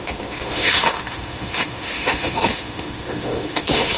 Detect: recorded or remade remade